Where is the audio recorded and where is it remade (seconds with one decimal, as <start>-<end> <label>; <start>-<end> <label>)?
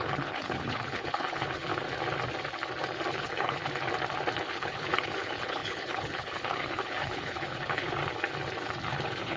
0.0-1.7 remade; 1.7-3.1 recorded; 3.1-3.6 remade; 3.6-4.5 recorded; 4.5-8.0 remade; 8.0-8.9 recorded; 8.9-9.4 remade